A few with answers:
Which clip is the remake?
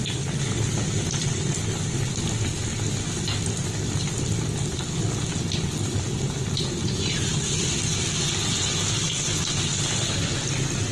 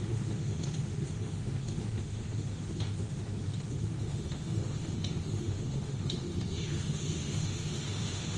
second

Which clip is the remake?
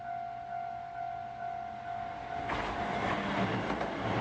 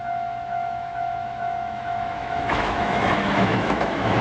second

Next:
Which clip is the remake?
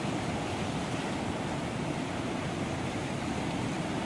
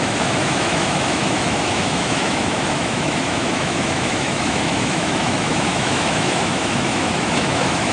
second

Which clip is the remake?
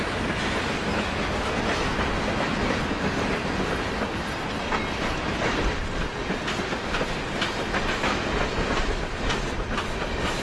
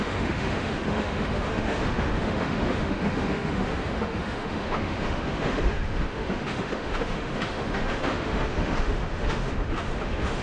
second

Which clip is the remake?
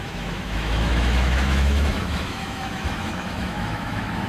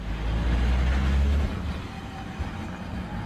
first